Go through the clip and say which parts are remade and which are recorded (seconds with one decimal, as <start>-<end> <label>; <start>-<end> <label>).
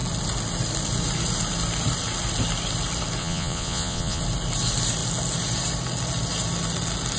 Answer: 0.0-3.2 recorded; 3.2-4.2 remade; 4.2-7.2 recorded